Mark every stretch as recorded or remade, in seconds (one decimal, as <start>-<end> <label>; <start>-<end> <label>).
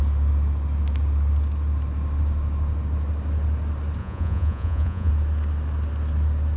0.0-4.0 recorded; 4.0-5.1 remade; 5.1-6.6 recorded